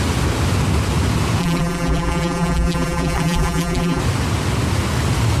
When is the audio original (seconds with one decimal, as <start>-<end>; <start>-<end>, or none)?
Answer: 0.0-1.4; 4.0-5.4